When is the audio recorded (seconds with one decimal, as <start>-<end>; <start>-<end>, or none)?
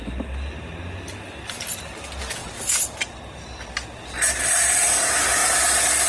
0.0-6.1